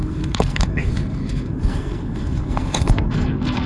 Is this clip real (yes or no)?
no